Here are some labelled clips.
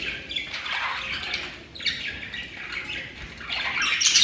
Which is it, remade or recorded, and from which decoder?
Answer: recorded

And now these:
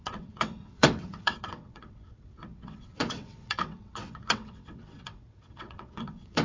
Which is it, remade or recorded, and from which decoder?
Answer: remade, vocoder, WaveNeXt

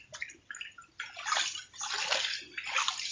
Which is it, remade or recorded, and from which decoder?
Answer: recorded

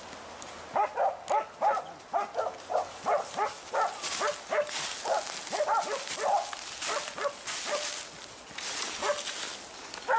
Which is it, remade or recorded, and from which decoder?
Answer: recorded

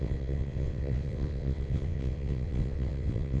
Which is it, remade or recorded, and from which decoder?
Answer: remade, vocoder, WaveNeXt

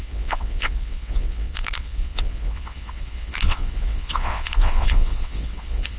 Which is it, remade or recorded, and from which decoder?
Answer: remade, vocoder, WaveNeXt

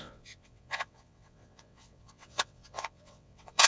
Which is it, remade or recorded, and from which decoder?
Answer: remade, vocoder, WaveNeXt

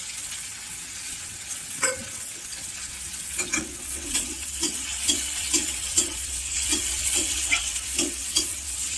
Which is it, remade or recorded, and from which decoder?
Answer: remade, vocoder, WaveNeXt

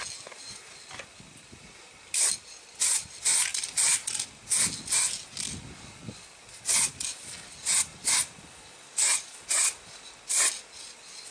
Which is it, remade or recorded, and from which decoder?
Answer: recorded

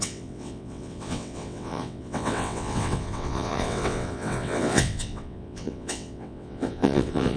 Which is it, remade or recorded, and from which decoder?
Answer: remade, vocoder, WaveNeXt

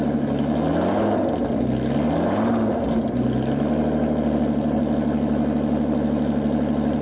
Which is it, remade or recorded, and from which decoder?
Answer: recorded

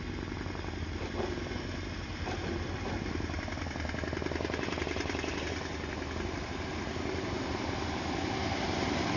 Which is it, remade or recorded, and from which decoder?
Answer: recorded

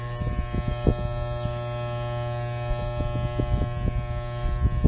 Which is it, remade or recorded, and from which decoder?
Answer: recorded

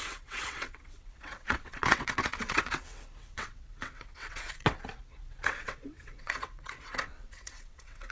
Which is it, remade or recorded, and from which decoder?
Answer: remade, vocoder, WaveNeXt